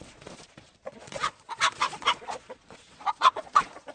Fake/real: fake